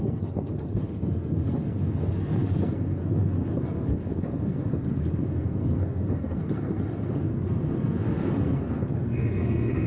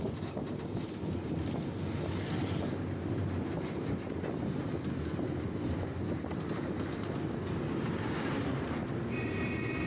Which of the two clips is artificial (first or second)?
first